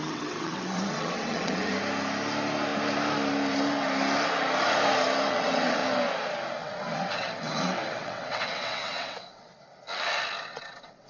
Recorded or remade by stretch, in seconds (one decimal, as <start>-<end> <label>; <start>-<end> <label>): 0.0-1.7 remade; 1.7-5.3 recorded; 5.3-5.8 remade; 5.8-6.6 recorded; 6.6-9.5 remade; 9.5-10.4 recorded; 10.4-11.1 remade